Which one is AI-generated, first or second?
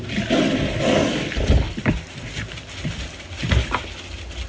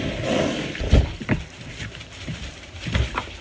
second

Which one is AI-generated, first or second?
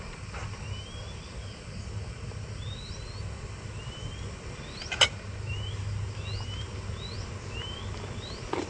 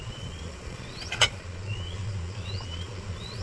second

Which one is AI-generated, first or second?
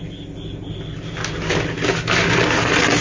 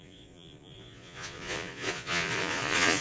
second